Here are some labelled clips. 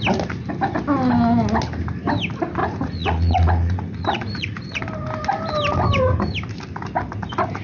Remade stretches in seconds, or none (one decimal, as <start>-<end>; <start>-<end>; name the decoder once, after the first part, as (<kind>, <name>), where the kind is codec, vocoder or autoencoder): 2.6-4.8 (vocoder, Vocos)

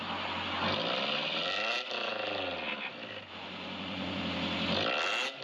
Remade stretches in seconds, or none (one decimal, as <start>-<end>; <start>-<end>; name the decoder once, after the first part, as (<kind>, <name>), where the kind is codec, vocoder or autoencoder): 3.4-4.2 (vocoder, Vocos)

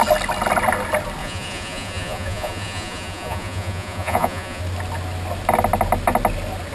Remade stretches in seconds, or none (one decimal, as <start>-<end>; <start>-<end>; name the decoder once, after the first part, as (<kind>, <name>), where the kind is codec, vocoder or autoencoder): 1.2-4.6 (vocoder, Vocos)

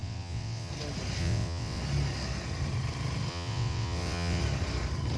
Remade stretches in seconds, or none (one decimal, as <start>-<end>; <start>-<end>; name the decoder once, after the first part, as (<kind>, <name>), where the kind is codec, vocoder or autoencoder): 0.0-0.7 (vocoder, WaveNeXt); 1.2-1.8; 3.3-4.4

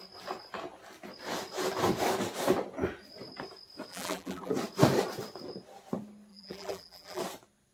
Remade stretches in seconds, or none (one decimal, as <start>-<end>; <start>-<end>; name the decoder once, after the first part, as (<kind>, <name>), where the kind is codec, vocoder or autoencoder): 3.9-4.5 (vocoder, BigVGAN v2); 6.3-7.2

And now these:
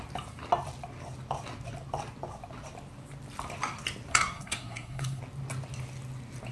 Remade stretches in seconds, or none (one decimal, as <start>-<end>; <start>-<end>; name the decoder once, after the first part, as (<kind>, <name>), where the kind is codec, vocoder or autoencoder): 4.1-5.2 (codec, SNAC)